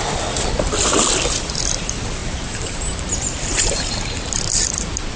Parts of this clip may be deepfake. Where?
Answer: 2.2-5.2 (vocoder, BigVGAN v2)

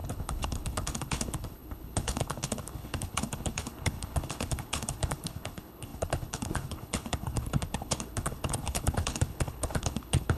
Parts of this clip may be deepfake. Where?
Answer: 0.0-10.4 (codec, HILCodec)

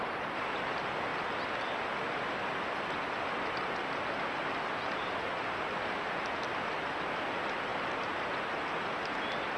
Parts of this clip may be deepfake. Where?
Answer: none

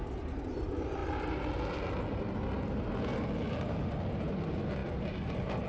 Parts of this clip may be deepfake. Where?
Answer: none

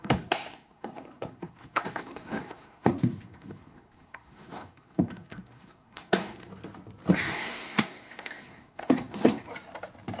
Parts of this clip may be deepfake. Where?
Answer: 0.0-6.5 (codec, SNAC); 7.1-9.5

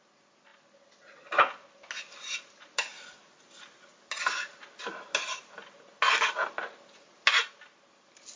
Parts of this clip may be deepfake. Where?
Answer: none

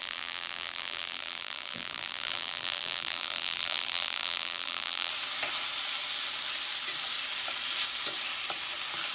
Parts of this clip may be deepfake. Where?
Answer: 0.0-5.1 (vocoder, BigVGAN v2)